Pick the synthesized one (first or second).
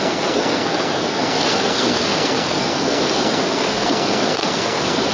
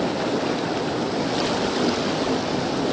first